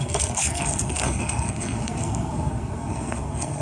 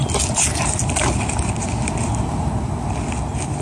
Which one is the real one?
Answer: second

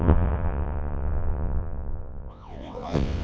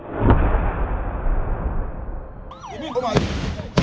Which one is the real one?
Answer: second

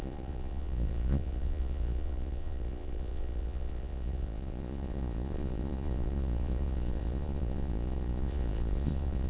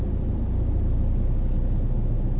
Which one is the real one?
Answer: second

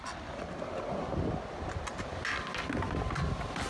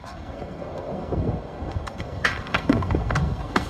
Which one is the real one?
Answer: first